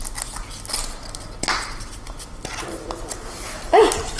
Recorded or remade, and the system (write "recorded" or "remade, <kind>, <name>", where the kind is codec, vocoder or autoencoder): recorded